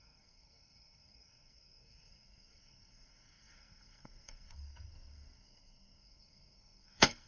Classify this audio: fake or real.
fake